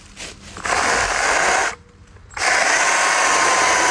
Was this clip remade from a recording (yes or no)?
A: no